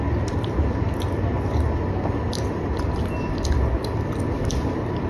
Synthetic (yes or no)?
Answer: no